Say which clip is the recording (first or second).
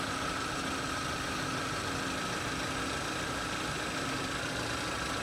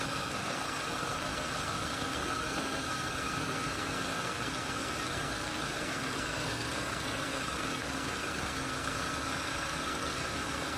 first